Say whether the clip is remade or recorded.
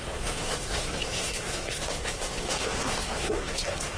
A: remade